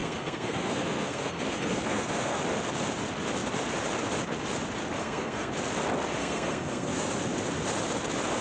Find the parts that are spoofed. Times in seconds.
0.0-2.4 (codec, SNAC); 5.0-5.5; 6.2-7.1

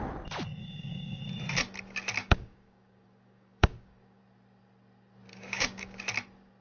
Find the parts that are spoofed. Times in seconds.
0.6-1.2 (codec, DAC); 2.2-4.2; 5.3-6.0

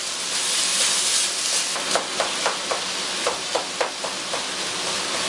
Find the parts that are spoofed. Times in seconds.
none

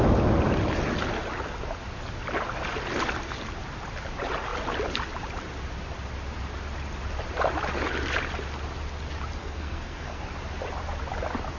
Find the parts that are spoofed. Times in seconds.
9.4-10.2 (codec, SNAC)

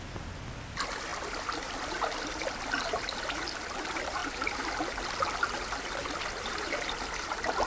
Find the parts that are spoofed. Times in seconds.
4.2-4.8 (vocoder, BigVGAN v2)